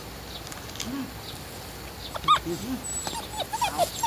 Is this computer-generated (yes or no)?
no